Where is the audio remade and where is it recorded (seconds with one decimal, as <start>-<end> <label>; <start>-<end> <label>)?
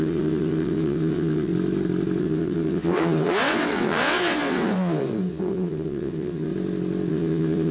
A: 0.0-1.5 remade; 1.5-2.2 recorded; 2.2-6.5 remade; 6.5-7.1 recorded; 7.1-7.7 remade